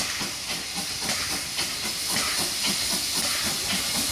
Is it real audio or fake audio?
real